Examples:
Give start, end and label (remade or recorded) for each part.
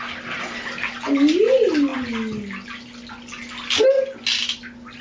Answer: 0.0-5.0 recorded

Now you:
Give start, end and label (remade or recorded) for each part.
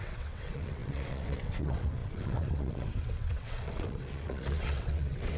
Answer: 0.0-5.4 remade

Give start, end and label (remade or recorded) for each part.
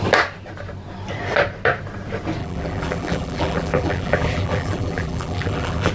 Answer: 0.0-2.4 recorded; 2.4-5.9 remade